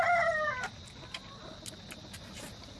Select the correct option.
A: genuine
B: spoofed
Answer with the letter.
A